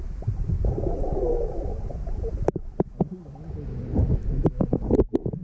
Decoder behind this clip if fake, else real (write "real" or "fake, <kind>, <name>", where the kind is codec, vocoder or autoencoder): real